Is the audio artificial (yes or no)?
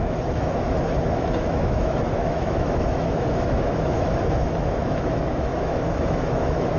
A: yes